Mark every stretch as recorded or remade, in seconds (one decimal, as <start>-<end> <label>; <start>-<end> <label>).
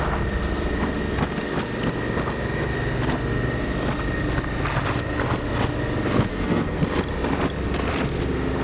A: 0.0-6.3 recorded; 6.3-6.8 remade; 6.8-8.6 recorded